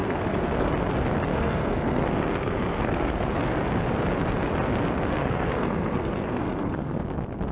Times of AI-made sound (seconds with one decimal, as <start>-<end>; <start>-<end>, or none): 0.0-0.7; 1.3-3.3; 5.2-7.0